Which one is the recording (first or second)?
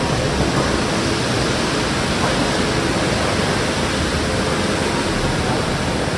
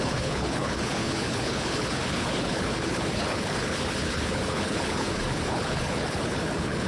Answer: first